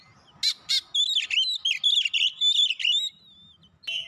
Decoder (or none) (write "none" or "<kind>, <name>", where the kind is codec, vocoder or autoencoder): none